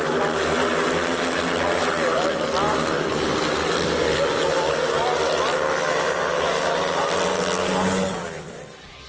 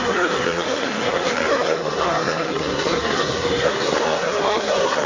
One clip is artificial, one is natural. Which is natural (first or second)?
first